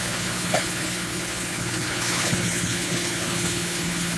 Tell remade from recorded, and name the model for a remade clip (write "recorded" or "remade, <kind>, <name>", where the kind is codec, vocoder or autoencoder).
remade, codec, HILCodec